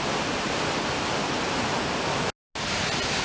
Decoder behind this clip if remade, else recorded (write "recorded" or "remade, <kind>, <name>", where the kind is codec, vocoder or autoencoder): recorded